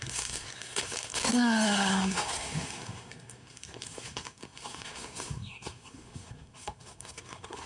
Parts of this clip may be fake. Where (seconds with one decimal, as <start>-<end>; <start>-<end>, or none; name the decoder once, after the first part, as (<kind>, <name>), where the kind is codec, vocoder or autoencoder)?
0.0-7.7 (codec, SNAC)